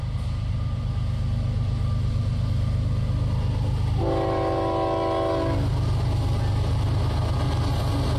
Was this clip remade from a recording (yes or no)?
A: no